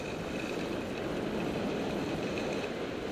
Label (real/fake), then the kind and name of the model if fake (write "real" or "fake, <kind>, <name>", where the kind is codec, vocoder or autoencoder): real